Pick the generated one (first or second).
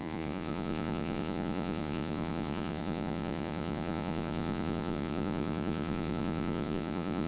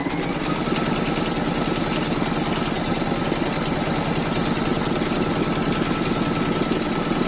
first